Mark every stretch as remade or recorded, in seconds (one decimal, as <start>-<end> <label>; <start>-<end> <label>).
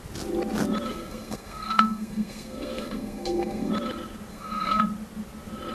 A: 0.0-0.9 recorded; 0.9-3.7 remade; 3.7-4.3 recorded; 4.3-4.8 remade; 4.8-5.7 recorded